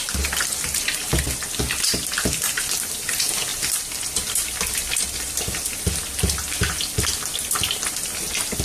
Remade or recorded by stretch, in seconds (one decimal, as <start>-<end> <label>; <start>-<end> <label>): 0.0-8.6 recorded

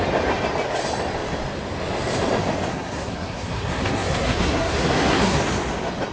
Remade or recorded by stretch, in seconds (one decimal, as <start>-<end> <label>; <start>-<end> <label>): 0.0-2.7 recorded; 2.7-5.4 remade; 5.4-6.1 recorded

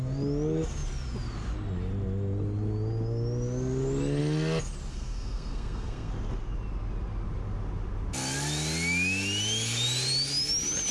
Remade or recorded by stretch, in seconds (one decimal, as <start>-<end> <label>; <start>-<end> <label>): 0.0-4.9 recorded; 4.9-6.1 remade; 6.1-10.9 recorded

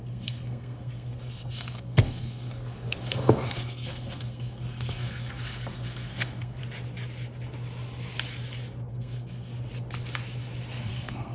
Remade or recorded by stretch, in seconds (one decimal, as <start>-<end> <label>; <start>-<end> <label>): 0.0-6.6 remade; 6.6-8.9 recorded; 8.9-9.5 remade; 9.5-10.8 recorded; 10.8-11.3 remade

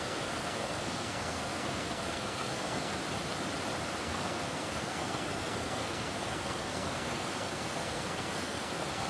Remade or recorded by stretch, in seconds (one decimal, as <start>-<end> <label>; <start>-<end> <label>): 0.0-3.0 remade; 3.0-4.0 recorded; 4.0-9.1 remade

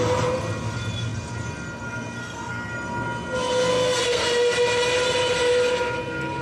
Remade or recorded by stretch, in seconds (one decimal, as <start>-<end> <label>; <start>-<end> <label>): 0.0-2.2 recorded; 2.2-2.7 remade; 2.7-3.7 recorded; 3.7-4.3 remade; 4.3-6.4 recorded

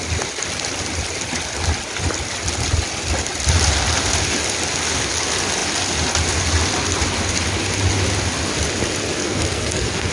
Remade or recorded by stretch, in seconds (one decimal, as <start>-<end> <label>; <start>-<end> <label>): 0.0-9.2 recorded; 9.2-10.1 remade

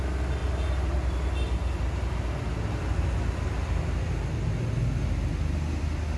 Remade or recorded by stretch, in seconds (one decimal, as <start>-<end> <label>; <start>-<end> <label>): 0.0-6.2 recorded